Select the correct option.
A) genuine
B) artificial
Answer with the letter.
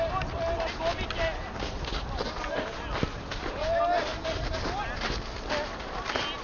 A